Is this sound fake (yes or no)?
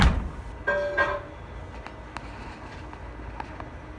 no